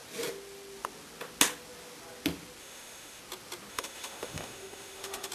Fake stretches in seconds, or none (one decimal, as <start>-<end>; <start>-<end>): 2.6-3.2; 3.7-5.3